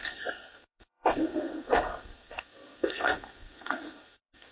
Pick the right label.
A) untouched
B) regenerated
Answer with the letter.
B